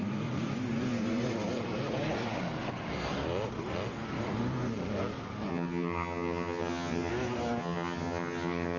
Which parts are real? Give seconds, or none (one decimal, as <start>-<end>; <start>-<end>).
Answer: 0.0-5.5; 7.1-7.6